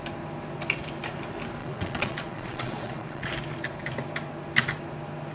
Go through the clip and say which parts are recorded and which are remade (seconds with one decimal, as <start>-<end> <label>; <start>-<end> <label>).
0.0-1.6 recorded; 1.6-3.3 remade; 3.3-5.3 recorded

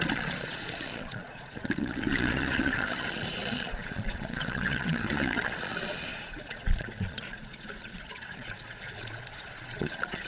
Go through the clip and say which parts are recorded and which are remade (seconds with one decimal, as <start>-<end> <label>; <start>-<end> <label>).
0.0-10.3 remade

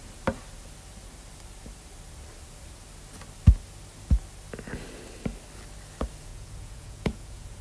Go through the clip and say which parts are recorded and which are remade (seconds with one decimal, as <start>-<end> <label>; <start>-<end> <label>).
0.0-6.3 recorded; 6.3-7.6 remade

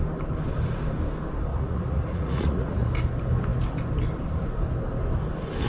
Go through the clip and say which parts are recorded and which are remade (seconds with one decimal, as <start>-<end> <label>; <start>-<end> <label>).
0.0-1.5 recorded; 1.5-2.9 remade; 2.9-5.7 recorded

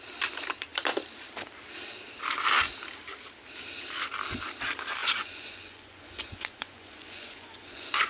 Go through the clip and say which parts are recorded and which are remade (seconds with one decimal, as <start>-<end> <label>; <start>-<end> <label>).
0.0-5.0 recorded; 5.0-8.1 remade